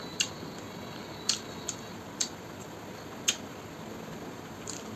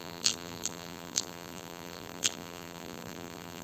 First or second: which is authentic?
first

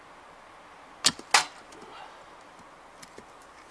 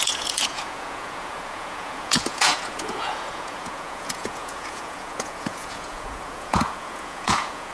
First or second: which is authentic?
first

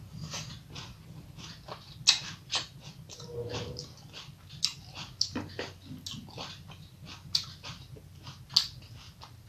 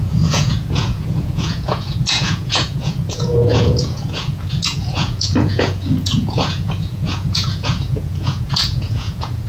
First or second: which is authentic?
first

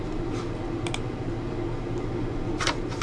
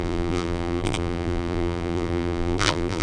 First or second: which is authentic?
first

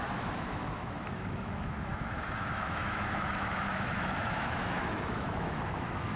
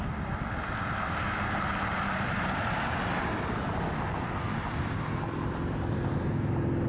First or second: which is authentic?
second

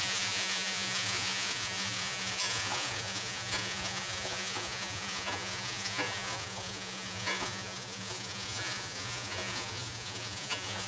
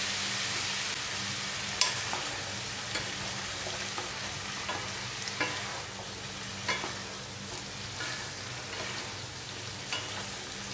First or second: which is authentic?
second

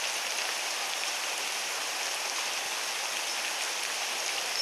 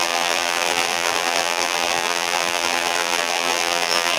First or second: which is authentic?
first